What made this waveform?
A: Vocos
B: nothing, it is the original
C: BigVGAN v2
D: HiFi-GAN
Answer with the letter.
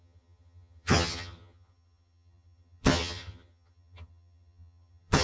D